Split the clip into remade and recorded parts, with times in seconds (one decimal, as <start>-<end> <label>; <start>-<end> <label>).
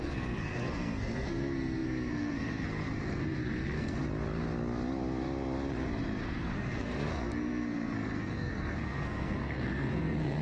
0.0-4.0 remade; 4.0-6.2 recorded; 6.2-10.4 remade